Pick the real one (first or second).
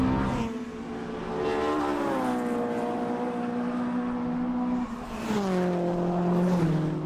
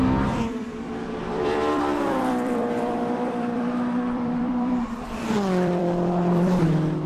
first